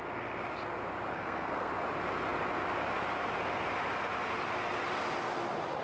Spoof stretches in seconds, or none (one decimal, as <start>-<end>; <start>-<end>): 1.1-1.7